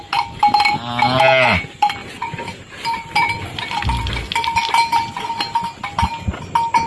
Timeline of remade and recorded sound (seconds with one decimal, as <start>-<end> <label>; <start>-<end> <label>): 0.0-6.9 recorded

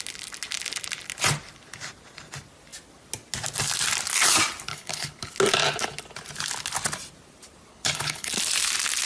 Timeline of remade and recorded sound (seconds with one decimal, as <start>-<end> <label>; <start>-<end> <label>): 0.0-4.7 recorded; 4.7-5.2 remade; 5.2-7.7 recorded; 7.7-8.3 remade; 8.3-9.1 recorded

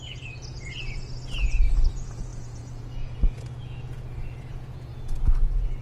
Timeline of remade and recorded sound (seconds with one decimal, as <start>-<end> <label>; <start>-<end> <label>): 0.0-5.8 remade